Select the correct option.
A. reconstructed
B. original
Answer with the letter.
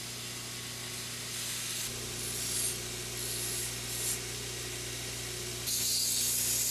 B